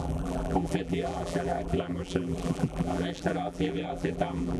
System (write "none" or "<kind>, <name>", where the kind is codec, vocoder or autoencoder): vocoder, BigVGAN v2